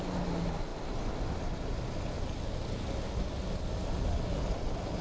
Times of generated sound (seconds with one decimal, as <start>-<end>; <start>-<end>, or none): none